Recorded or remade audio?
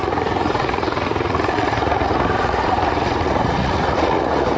remade